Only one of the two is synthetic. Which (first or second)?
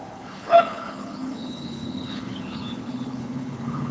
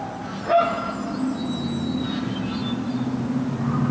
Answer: first